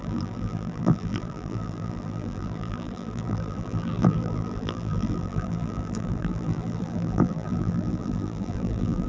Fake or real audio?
fake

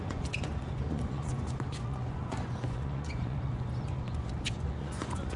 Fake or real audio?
fake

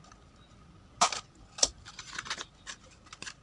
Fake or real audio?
real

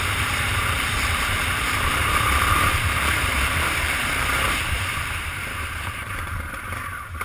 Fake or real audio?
fake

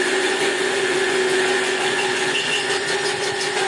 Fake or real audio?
fake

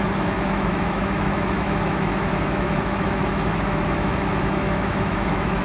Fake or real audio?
fake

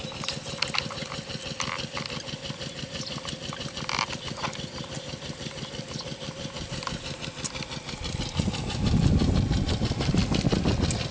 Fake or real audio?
real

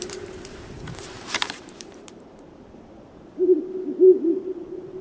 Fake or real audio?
fake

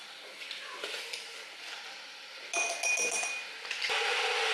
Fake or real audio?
real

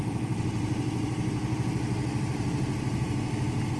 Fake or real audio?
real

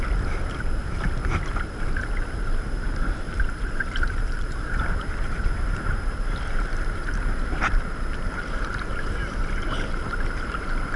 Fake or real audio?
fake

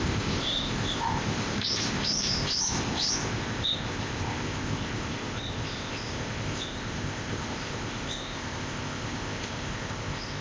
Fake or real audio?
fake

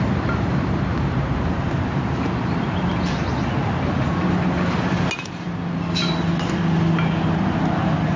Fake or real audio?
real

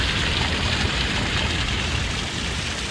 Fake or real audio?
real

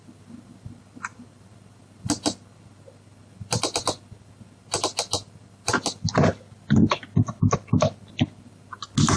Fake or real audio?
real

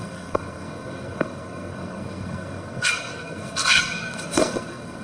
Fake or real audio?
fake